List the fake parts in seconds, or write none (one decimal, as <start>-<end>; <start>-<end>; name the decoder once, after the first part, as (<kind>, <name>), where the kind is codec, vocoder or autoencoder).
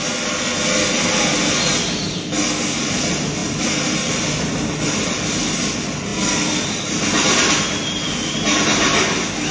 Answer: 3.4-5.4 (vocoder, BigVGAN v2); 6.1-7.5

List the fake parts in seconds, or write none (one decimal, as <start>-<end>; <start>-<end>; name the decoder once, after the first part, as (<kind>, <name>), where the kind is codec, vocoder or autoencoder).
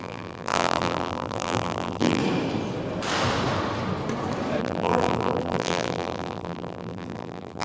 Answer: 0.0-2.2 (vocoder, BigVGAN v2); 4.6-7.6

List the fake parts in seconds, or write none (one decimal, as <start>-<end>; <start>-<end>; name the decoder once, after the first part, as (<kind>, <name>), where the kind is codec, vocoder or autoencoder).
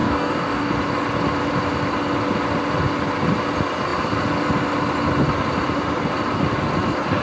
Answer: 0.0-0.7 (codec, DAC)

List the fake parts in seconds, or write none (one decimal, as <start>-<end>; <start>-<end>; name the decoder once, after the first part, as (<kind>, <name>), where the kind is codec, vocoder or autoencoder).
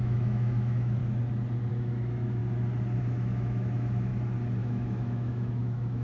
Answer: 0.0-1.0 (autoencoder, DAC-VAE); 1.7-2.4; 3.0-4.1; 4.6-6.0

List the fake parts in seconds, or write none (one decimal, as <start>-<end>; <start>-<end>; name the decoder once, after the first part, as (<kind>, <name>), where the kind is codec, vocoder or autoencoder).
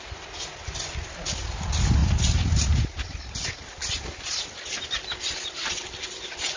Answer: none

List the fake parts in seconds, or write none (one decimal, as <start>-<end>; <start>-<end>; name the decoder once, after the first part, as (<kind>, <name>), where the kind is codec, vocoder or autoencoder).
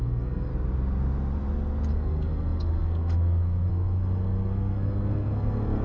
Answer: 0.0-0.5 (codec, SNAC); 1.9-5.8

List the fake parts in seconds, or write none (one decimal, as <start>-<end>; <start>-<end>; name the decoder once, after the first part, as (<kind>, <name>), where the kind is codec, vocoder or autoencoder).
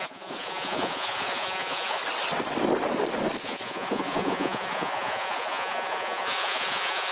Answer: 0.0-2.0 (vocoder, Vocos); 3.4-7.1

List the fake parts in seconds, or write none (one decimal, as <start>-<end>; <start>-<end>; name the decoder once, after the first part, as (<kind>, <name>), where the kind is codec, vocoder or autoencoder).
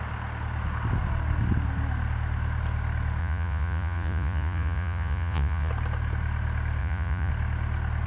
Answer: 3.2-5.7 (vocoder, Vocos); 6.8-7.3